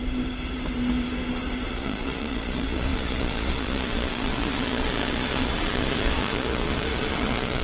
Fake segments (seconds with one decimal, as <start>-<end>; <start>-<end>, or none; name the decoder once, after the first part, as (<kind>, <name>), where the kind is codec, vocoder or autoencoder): 1.7-7.6 (vocoder, Vocos)

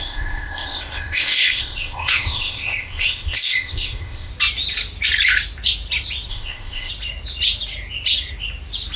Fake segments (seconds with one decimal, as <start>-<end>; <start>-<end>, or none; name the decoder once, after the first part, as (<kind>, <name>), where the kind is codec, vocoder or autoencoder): 0.0-4.3 (codec, ZipCodec); 6.3-6.9

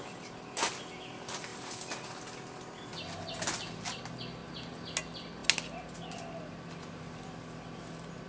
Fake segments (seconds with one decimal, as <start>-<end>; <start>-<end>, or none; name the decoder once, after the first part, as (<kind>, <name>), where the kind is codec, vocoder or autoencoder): none

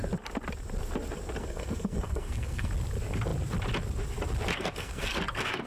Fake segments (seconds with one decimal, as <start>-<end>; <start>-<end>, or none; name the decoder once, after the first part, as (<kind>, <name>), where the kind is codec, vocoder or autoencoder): 1.4-2.7 (codec, SNAC); 4.5-5.7